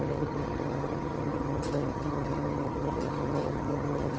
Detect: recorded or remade remade